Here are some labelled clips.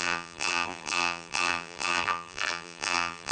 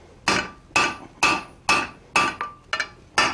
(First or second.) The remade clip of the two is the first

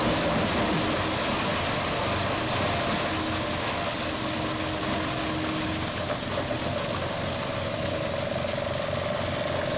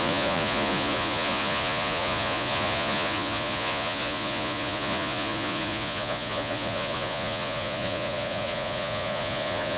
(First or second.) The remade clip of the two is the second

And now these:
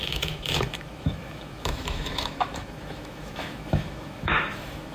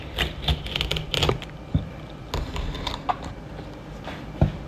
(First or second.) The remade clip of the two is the first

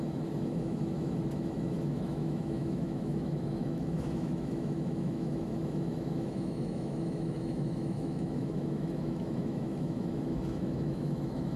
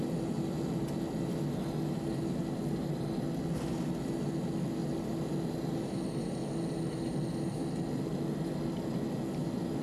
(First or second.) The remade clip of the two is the first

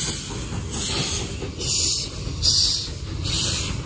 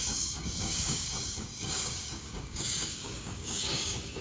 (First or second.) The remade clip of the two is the second